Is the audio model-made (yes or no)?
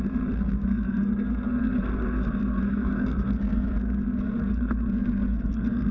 yes